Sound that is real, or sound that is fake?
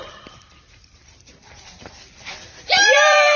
fake